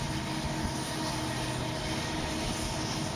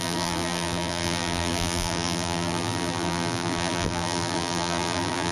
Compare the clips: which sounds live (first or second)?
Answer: first